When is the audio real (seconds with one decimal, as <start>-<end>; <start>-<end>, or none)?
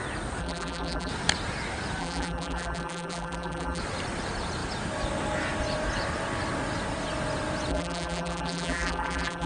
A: 0.0-0.4; 1.1-2.0; 3.8-7.7